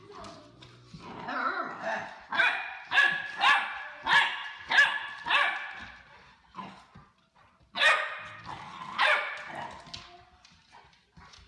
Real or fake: real